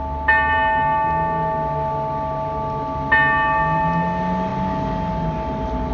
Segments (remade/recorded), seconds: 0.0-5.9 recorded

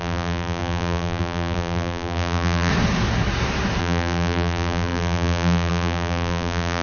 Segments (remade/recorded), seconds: 0.0-2.7 remade; 2.7-3.8 recorded; 3.8-6.8 remade

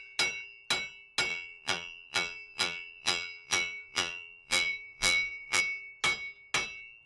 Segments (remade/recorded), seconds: 0.0-1.3 recorded; 1.3-5.6 remade; 5.6-7.1 recorded